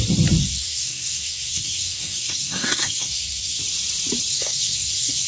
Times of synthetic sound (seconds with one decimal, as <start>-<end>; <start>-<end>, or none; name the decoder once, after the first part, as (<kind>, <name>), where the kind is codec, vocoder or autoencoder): 0.4-3.6 (codec, SNAC); 4.3-5.3